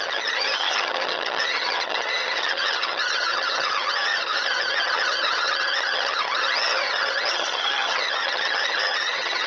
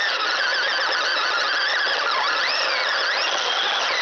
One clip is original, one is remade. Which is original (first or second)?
second